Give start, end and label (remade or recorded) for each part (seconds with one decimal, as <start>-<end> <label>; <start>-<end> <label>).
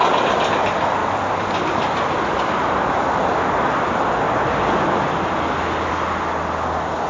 0.0-7.1 recorded